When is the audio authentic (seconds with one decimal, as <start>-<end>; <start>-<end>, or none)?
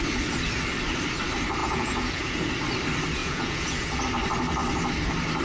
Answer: 0.0-1.6; 2.5-3.2; 4.0-5.4